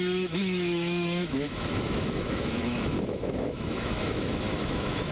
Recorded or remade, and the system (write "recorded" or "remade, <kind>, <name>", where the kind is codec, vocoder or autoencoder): remade, autoencoder, DAC-VAE